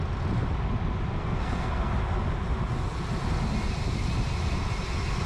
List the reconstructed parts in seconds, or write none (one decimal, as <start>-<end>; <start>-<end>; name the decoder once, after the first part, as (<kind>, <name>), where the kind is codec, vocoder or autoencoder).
1.1-1.9 (codec, SNAC)

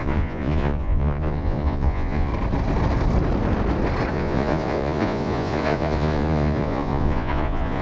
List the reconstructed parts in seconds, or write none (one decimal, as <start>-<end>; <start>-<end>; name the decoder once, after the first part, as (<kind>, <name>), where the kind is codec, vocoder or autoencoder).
0.0-2.3 (vocoder, Vocos); 4.1-7.8

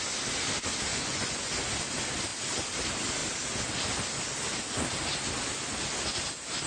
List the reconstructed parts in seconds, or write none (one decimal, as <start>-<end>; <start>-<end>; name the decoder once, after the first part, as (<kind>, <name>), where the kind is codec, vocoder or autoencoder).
0.9-1.5 (vocoder, Vocos)

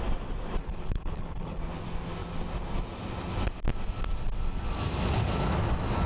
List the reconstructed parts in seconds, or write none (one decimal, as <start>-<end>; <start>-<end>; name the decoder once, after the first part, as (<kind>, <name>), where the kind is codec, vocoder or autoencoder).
0.6-1.6 (codec, HILCodec)